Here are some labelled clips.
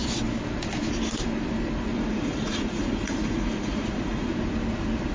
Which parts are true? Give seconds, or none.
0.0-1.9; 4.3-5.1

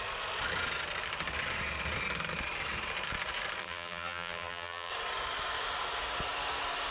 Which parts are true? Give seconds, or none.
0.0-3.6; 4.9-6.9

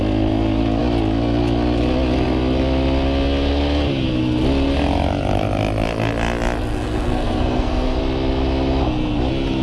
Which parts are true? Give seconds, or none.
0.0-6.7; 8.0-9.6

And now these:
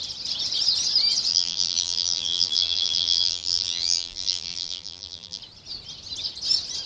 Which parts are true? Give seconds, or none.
0.0-1.3; 5.4-6.9

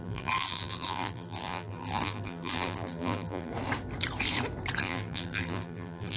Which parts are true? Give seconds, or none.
3.5-4.8

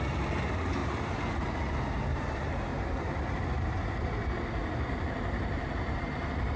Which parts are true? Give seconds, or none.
0.0-0.8; 1.3-2.1; 3.6-4.6; 5.7-6.6

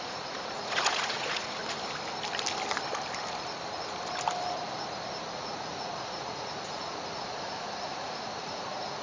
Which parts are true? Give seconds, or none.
1.6-5.3

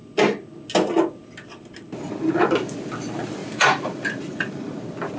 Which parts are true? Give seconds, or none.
0.0-3.4; 4.7-5.2